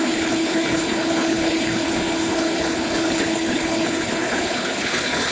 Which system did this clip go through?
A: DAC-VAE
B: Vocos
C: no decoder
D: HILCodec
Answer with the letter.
D